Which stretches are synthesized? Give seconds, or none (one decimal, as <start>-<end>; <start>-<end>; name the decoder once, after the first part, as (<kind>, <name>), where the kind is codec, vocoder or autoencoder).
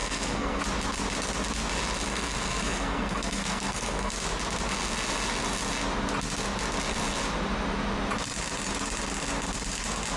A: 0.0-0.6 (codec, SNAC); 2.1-4.1